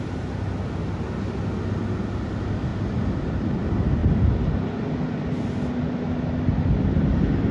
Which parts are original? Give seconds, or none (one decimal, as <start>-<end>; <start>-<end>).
0.0-7.5